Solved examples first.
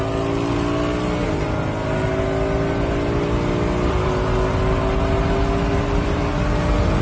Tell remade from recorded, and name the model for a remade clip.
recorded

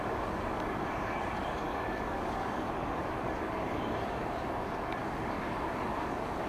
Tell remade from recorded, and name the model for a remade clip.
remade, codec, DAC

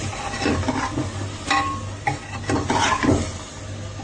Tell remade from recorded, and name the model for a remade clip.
recorded